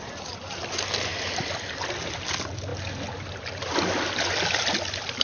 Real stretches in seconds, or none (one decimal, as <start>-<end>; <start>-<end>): 0.0-5.2